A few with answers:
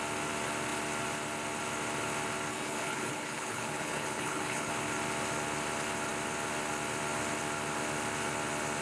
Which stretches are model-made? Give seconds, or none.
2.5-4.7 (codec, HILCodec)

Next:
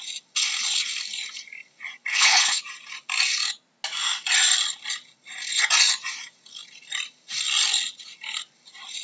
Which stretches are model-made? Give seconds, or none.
2.1-2.6 (codec, HILCodec)

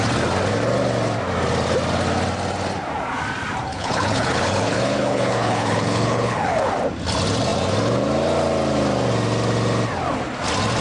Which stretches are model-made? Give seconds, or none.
3.7-6.7 (codec, HILCodec)

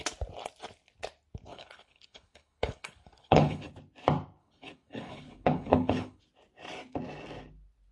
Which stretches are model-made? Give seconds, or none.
1.5-3.7 (codec, HILCodec); 4.4-6.2